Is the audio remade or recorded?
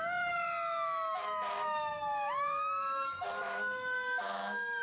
remade